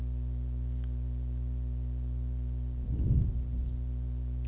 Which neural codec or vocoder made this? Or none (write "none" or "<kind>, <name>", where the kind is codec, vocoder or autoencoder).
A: none